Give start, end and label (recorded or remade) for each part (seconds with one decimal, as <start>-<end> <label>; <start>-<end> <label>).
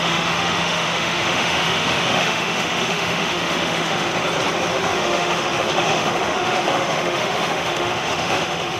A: 0.0-4.1 remade; 4.1-4.7 recorded; 4.7-8.8 remade